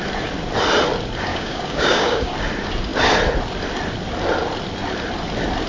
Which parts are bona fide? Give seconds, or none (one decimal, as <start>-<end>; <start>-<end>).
0.0-1.3; 2.3-5.7